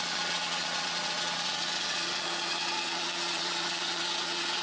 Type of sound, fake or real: fake